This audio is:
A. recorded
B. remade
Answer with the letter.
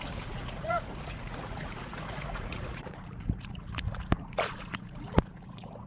B